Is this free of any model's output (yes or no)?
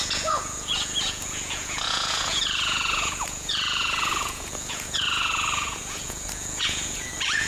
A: no